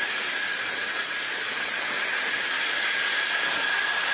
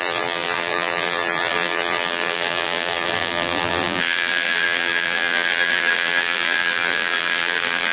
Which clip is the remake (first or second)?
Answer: second